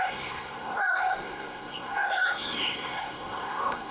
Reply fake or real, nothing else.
fake